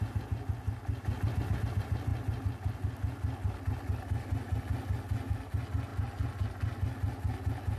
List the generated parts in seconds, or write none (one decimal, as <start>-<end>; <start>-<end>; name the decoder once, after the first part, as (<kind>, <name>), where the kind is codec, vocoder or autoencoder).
none